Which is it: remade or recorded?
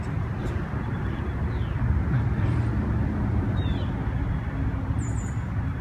recorded